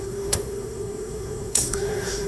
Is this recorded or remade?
remade